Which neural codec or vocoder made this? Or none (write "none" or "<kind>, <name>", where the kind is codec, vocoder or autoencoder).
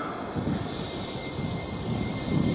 none